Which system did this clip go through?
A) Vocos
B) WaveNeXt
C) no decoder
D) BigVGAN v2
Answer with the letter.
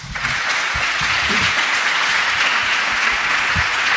A